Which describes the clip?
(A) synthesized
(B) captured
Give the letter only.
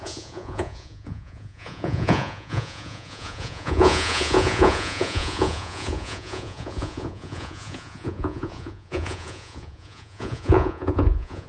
A